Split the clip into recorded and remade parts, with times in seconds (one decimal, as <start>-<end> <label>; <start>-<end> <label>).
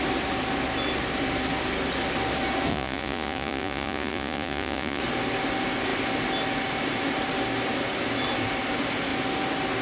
0.0-2.7 recorded; 2.7-5.0 remade; 5.0-9.8 recorded